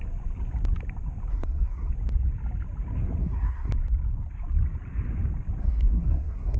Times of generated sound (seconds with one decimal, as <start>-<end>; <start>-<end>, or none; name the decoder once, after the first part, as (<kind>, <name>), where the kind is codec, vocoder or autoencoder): 1.3-1.9 (codec, SNAC); 3.2-3.7; 5.6-6.6